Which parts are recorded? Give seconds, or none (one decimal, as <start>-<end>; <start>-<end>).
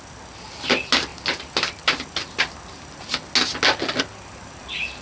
0.0-5.0